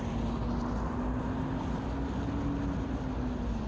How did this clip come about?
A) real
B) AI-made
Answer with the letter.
A